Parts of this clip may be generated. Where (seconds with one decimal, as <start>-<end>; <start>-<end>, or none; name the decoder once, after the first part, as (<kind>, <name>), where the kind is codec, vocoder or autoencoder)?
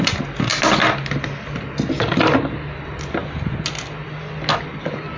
none